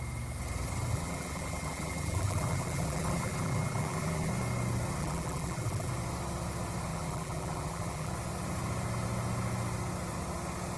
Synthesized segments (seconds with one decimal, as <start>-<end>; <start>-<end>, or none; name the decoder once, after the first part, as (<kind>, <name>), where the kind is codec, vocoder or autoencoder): 0.9-4.3 (vocoder, BigVGAN v2); 5.0-5.9; 6.9-8.1